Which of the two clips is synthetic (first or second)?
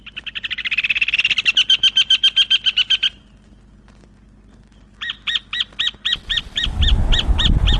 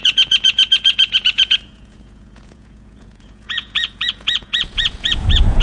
second